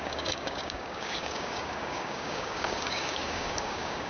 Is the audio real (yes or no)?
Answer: no